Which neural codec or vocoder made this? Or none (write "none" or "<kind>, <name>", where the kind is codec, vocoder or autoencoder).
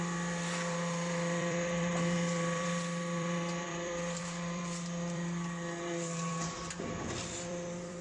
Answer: vocoder, BigVGAN v2